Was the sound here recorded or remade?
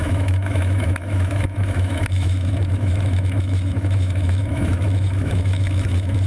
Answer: remade